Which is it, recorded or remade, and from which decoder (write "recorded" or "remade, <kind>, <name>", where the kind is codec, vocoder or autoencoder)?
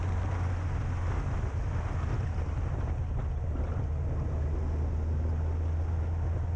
recorded